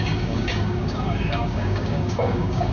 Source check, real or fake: fake